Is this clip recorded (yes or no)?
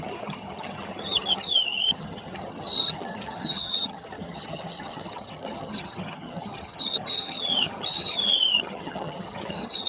no